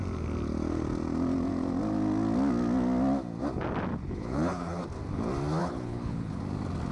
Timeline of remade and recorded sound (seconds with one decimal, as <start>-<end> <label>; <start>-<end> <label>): 0.0-3.9 recorded; 3.9-4.8 remade; 4.8-5.6 recorded; 5.6-6.4 remade; 6.4-6.9 recorded